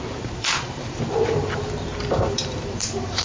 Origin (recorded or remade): remade